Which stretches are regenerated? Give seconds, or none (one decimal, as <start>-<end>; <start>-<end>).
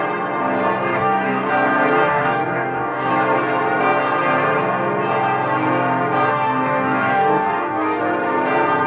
0.9-1.5; 2.1-3.1; 6.3-8.0